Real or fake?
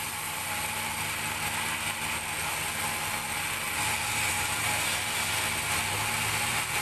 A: real